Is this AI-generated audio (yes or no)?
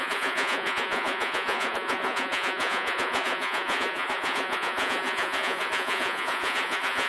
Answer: yes